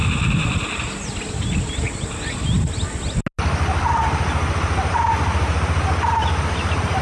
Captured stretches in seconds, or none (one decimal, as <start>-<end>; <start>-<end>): 0.0-7.0